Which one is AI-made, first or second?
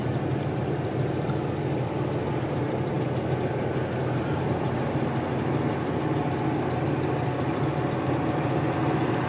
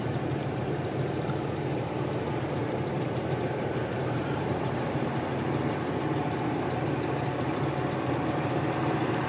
second